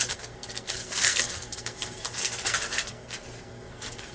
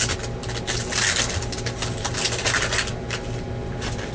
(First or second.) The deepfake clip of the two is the first